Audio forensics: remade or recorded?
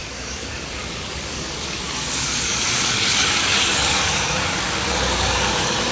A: remade